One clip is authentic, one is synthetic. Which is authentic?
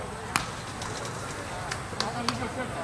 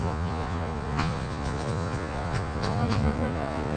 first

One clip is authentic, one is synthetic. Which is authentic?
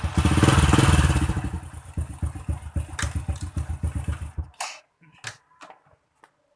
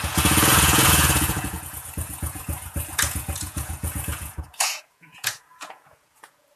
first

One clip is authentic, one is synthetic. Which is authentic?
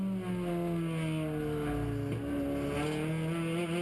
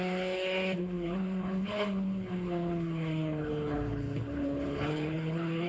first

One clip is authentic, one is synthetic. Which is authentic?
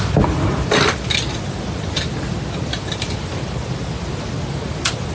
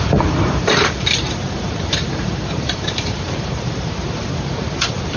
first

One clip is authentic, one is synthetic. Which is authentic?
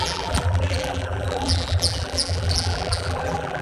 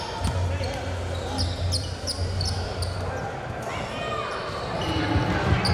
second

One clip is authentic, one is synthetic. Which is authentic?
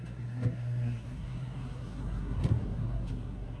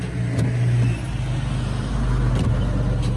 second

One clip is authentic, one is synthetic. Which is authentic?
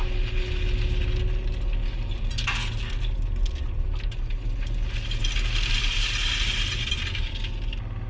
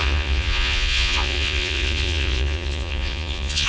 first